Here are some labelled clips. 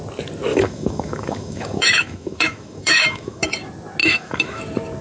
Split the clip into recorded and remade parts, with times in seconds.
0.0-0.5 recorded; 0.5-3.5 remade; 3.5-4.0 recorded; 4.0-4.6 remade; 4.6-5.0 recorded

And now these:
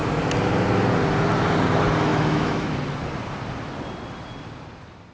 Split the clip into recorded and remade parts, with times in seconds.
0.0-2.1 recorded; 2.1-2.7 remade; 2.7-5.1 recorded